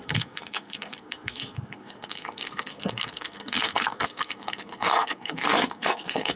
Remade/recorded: remade